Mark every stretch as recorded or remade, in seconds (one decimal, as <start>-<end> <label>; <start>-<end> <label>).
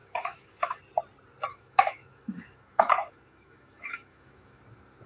0.0-0.8 remade; 0.8-1.5 recorded; 1.5-4.6 remade; 4.6-5.1 recorded